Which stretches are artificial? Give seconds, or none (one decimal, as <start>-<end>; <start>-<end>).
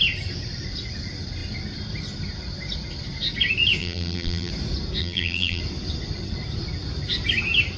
3.8-4.5; 5.0-5.6